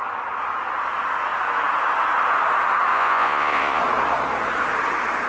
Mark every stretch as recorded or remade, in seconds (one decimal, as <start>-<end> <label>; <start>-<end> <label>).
0.0-2.9 recorded; 2.9-3.8 remade; 3.8-5.3 recorded